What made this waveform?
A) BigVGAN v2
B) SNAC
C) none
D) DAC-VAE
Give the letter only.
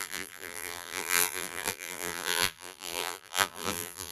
A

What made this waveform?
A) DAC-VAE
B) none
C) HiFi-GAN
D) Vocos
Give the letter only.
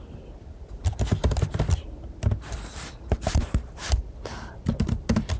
B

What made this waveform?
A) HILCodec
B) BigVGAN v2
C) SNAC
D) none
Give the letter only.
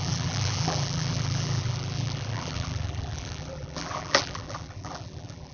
B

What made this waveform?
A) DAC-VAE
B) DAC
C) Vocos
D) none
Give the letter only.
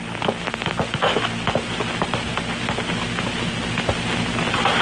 D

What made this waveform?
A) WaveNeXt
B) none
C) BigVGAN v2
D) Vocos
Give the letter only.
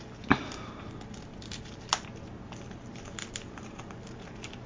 B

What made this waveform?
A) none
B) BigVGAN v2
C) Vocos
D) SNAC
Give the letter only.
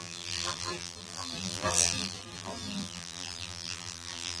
B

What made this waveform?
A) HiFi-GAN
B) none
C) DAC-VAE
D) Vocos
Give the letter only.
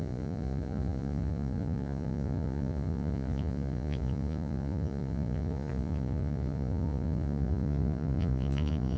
D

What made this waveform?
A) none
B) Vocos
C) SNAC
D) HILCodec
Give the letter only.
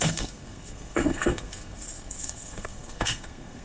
C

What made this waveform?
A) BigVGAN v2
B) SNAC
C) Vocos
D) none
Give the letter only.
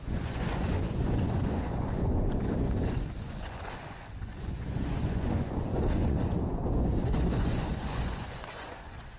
C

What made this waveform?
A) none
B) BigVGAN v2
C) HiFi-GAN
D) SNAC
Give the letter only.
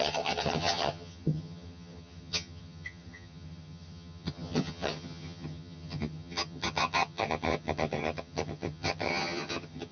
C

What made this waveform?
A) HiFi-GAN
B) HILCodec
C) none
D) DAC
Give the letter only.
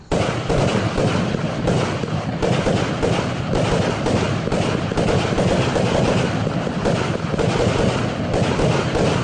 C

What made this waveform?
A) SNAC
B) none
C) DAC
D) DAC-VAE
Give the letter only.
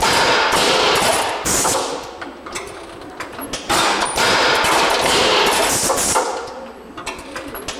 B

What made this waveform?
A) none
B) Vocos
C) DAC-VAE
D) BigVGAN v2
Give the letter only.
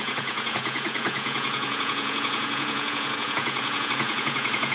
B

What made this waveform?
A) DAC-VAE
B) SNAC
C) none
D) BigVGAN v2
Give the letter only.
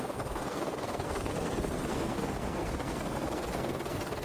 B